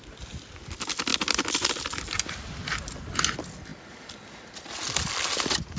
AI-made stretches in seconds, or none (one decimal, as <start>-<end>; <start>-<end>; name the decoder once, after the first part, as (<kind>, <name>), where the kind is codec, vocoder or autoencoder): none